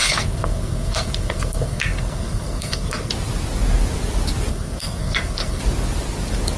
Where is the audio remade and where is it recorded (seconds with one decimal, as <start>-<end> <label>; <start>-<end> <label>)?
0.0-3.1 remade; 3.1-4.5 recorded; 4.5-5.6 remade; 5.6-6.6 recorded

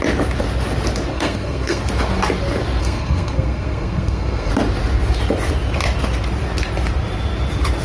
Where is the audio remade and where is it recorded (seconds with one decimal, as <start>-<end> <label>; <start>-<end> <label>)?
0.0-1.1 recorded; 1.1-1.8 remade; 1.8-2.8 recorded; 2.8-4.5 remade; 4.5-7.8 recorded

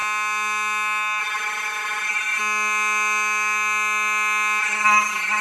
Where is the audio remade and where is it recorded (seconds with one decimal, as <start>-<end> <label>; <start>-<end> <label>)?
0.0-1.2 recorded; 1.2-2.4 remade; 2.4-4.6 recorded; 4.6-5.4 remade